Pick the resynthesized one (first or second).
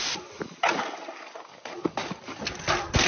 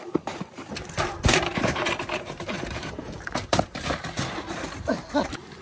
second